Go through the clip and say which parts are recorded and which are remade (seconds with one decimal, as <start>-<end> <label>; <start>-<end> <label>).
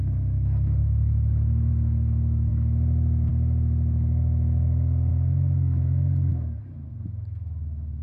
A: 0.0-0.8 recorded; 0.8-1.7 remade; 1.7-5.1 recorded; 5.1-6.3 remade; 6.3-8.0 recorded